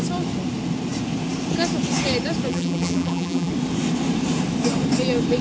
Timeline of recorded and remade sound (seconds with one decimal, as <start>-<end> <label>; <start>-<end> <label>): 0.0-2.5 recorded; 2.5-3.5 remade; 3.5-5.4 recorded